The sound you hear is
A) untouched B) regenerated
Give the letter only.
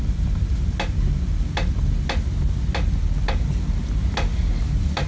A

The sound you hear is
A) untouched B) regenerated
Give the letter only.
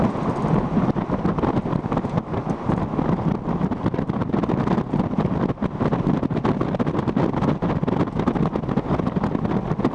A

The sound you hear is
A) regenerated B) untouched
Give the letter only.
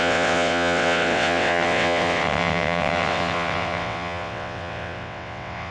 A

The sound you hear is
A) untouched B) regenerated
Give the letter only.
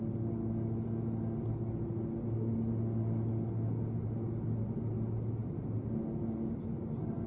A